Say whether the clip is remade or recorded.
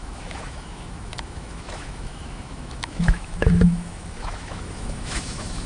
remade